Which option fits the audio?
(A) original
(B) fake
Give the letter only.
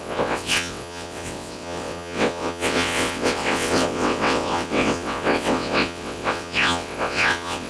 B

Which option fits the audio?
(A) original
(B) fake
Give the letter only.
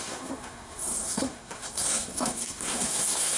B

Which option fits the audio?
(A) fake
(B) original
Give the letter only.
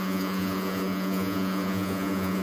A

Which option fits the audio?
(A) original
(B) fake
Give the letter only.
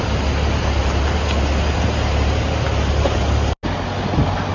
A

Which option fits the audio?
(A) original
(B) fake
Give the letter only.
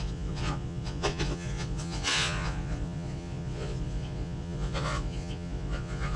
B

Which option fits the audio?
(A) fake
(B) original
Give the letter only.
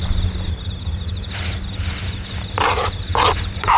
B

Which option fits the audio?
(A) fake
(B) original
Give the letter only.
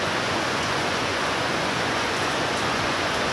A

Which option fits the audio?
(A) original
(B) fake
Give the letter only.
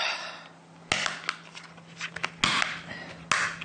A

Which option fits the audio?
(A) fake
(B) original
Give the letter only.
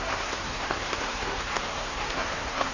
A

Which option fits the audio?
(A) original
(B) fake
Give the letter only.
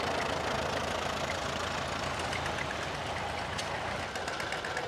A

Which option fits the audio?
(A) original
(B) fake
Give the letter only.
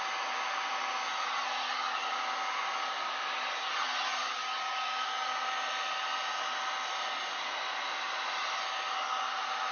A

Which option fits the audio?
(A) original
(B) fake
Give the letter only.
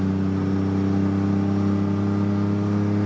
A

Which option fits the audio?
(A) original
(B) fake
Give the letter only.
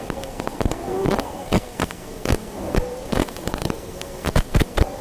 B